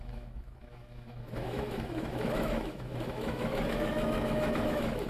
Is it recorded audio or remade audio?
remade